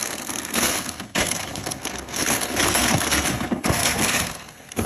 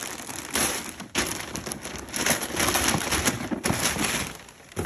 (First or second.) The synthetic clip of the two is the first